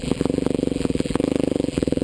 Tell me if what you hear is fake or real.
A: fake